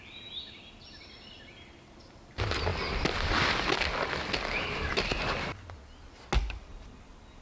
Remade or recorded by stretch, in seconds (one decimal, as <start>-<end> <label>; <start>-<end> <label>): 0.0-7.4 recorded